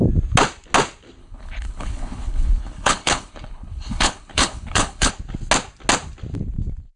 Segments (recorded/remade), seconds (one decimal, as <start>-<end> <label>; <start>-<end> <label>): 0.0-1.2 recorded; 1.2-5.1 remade; 5.1-7.0 recorded